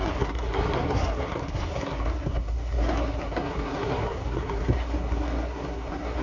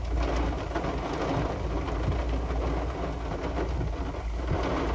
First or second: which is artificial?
first